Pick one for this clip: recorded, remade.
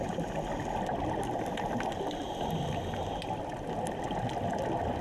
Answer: recorded